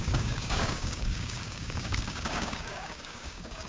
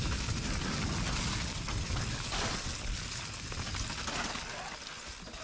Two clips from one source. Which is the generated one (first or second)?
first